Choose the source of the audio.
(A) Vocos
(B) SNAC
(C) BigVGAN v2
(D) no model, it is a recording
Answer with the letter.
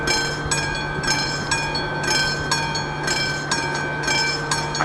D